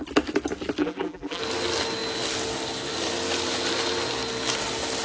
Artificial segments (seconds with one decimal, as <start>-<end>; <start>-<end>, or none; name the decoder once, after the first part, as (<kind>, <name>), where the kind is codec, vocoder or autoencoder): 0.8-1.4 (vocoder, BigVGAN v2)